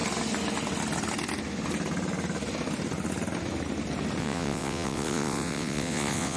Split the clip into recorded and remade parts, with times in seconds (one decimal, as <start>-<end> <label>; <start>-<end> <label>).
0.0-4.2 recorded; 4.2-6.4 remade